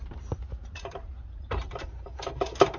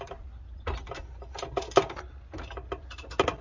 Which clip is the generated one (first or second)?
first